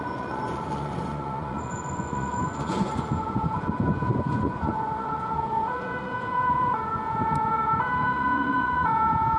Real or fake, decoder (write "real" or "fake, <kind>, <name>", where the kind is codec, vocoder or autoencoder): fake, vocoder, Vocos